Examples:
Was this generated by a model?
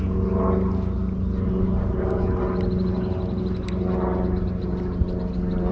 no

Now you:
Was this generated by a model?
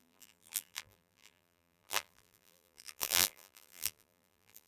yes